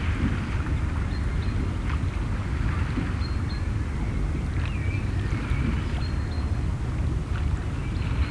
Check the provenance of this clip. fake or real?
real